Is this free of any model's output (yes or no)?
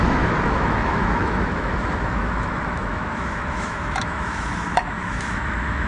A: no